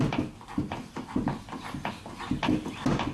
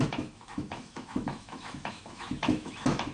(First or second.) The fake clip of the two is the second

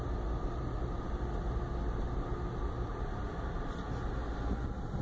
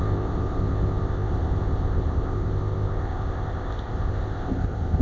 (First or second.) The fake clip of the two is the second